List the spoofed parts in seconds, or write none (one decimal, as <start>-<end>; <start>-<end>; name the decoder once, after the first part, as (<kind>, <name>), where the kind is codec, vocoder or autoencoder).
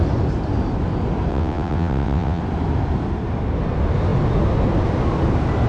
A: 1.3-2.4 (vocoder, WaveNeXt)